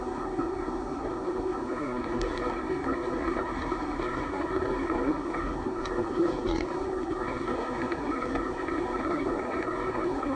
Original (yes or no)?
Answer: no